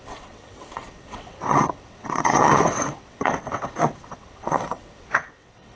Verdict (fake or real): fake